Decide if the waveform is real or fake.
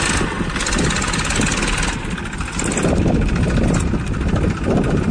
real